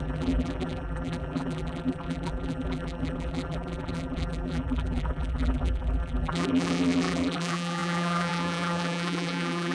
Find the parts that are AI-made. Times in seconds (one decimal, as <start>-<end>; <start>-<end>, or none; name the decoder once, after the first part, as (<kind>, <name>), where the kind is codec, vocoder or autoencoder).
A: 0.0-9.7 (vocoder, BigVGAN v2)